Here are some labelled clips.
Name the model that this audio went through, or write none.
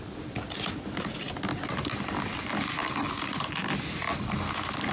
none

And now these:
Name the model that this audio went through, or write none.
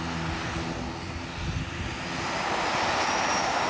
none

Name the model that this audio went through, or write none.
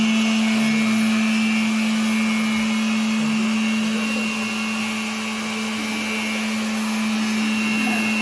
none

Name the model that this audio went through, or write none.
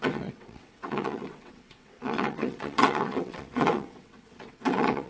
vocoder, WaveNeXt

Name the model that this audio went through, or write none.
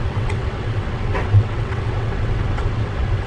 vocoder, WaveNeXt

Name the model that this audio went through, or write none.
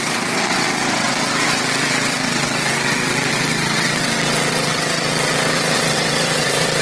vocoder, WaveNeXt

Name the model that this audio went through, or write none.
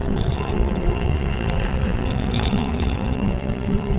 vocoder, WaveNeXt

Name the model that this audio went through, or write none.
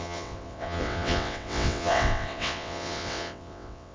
vocoder, WaveNeXt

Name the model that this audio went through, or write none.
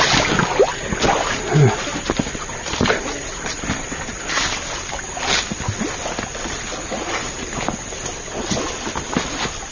none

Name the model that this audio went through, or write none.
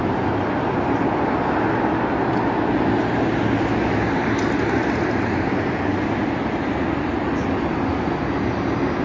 none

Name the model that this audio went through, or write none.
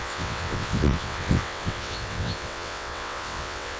vocoder, WaveNeXt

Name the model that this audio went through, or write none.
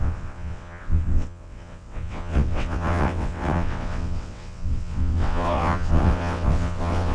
vocoder, WaveNeXt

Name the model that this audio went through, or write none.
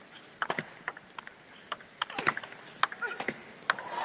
none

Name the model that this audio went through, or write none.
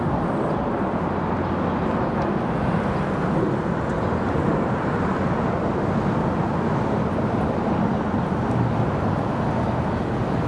none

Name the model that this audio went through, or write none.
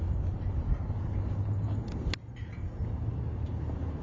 none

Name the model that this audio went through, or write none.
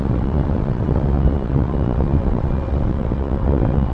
vocoder, WaveNeXt